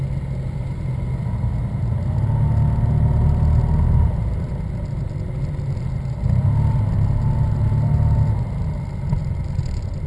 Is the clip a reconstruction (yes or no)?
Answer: no